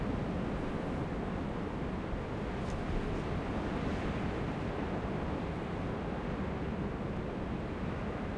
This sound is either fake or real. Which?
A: real